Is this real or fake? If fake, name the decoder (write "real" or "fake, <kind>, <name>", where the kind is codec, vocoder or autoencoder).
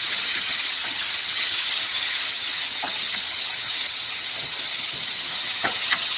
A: fake, vocoder, HiFi-GAN